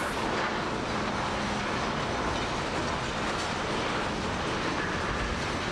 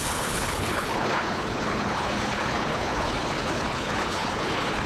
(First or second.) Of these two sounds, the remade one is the second